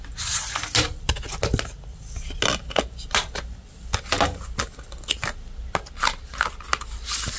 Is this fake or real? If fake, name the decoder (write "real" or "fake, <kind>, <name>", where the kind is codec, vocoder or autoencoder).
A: real